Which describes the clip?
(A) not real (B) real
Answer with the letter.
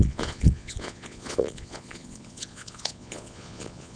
A